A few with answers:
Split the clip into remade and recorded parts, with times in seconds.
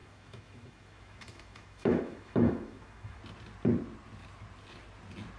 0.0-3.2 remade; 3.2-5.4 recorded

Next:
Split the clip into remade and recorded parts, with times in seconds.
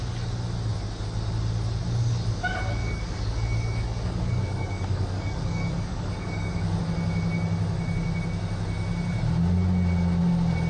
0.0-2.8 recorded; 2.8-6.8 remade; 6.8-10.7 recorded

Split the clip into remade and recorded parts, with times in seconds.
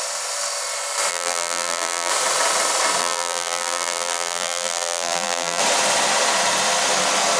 0.0-1.1 recorded; 1.1-2.1 remade; 2.1-3.0 recorded; 3.0-5.6 remade; 5.6-7.4 recorded